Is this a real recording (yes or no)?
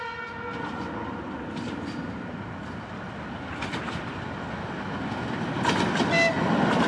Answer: yes